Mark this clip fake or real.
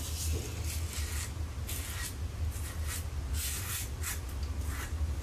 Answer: real